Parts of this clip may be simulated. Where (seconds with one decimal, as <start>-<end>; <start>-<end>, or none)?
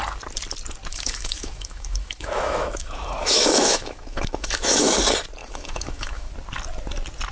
0.9-5.0; 5.4-6.3